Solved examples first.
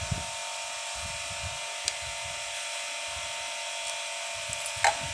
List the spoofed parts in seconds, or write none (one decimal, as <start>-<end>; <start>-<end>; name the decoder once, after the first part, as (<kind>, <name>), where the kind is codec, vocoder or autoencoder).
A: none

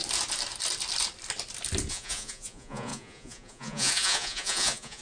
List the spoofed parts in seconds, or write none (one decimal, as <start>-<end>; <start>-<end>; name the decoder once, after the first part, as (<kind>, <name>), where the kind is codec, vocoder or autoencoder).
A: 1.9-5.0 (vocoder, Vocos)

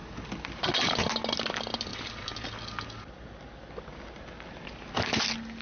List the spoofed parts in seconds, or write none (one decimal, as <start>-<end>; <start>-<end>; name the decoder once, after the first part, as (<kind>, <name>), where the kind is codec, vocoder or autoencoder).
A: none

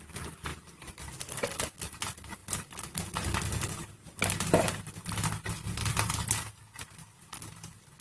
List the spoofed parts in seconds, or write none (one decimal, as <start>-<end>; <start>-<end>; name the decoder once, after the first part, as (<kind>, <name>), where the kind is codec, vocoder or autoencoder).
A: 0.5-1.2 (vocoder, BigVGAN v2)

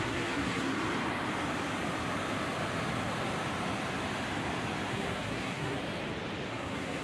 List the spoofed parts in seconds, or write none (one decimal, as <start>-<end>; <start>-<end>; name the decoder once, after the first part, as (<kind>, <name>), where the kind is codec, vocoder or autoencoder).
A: 0.0-0.7 (codec, SNAC); 4.9-5.8; 6.5-7.0

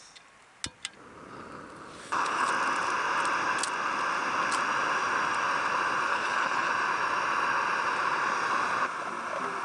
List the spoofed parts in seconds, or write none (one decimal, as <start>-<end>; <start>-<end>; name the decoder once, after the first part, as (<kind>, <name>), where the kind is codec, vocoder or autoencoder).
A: 2.0-2.5 (codec, HILCodec); 6.1-6.7

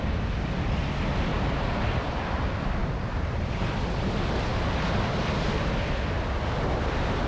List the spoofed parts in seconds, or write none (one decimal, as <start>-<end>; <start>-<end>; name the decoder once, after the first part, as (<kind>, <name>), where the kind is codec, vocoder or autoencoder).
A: 1.3-2.0 (vocoder, BigVGAN v2); 2.8-4.1